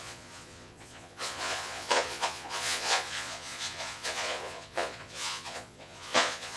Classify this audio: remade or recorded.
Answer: remade